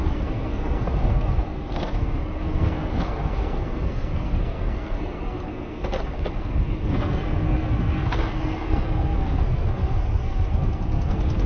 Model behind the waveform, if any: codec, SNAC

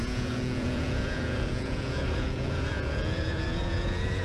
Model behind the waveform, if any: vocoder, Vocos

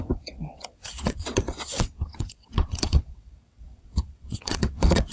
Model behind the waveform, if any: vocoder, WaveNeXt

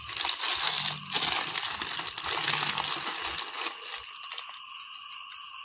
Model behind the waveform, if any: none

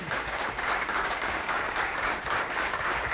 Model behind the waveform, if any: codec, DAC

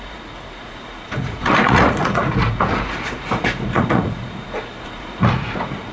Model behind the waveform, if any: vocoder, Vocos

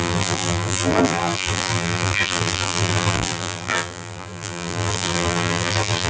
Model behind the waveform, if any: vocoder, BigVGAN v2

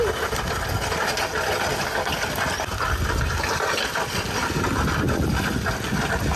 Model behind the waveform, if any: none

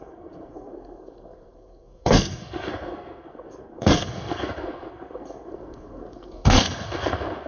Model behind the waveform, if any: codec, SNAC